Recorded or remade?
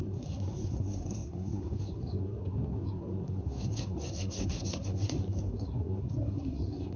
remade